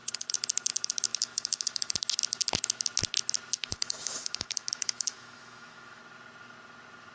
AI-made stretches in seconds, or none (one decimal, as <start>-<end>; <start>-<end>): 1.1-1.9; 3.6-6.0